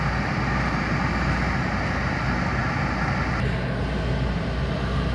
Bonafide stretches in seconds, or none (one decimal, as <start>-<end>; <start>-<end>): 0.0-5.1